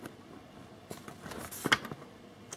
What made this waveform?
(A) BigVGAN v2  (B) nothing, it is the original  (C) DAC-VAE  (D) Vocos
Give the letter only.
B